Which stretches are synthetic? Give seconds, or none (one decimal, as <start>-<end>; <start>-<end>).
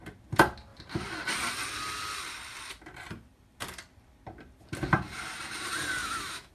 6.0-6.5